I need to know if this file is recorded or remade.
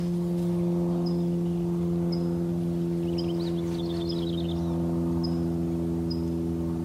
recorded